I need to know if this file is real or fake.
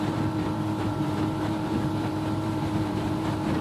fake